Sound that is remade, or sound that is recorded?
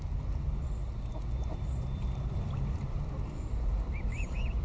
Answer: remade